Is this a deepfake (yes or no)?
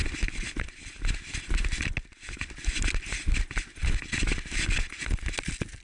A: no